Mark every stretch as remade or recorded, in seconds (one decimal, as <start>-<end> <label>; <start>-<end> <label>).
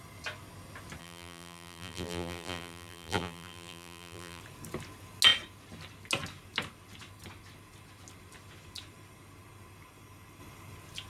0.0-1.0 recorded; 1.0-4.4 remade; 4.4-11.1 recorded